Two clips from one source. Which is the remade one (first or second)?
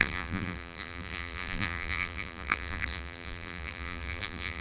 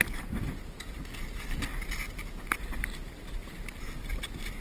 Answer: first